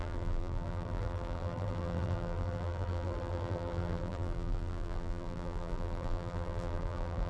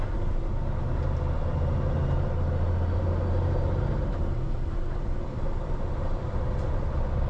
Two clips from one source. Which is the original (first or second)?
second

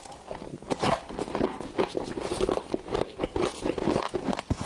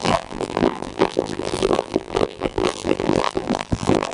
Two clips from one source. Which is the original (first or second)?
first